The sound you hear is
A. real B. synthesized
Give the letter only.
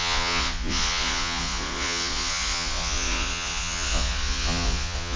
B